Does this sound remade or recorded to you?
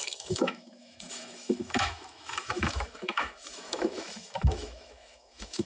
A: remade